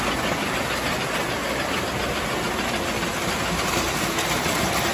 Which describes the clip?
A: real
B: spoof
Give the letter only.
A